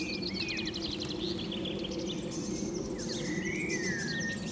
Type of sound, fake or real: real